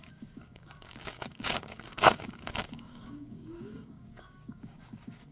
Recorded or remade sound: remade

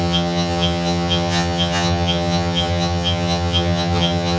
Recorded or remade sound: remade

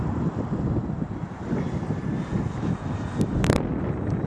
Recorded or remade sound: recorded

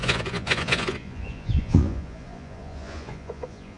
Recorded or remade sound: remade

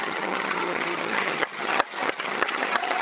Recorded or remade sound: remade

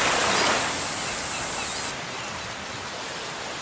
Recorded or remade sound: recorded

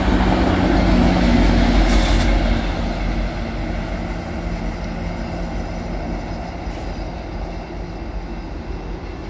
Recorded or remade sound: recorded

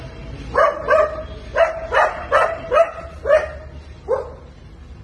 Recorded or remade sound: recorded